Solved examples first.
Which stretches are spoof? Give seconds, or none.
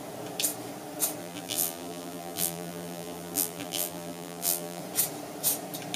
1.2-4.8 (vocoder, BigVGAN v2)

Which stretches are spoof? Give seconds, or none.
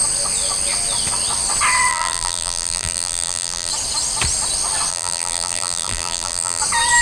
1.9-3.7 (vocoder, BigVGAN v2); 4.9-6.6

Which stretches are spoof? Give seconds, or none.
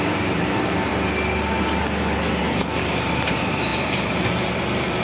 0.0-0.9 (vocoder, BigVGAN v2); 2.4-5.0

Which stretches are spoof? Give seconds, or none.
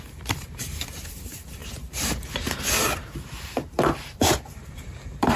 0.0-5.4 (vocoder, BigVGAN v2)